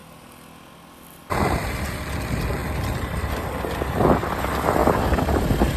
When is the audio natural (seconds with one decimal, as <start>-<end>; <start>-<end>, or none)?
0.0-5.8